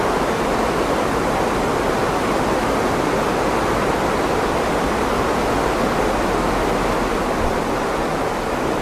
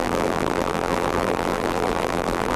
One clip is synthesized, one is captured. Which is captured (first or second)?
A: first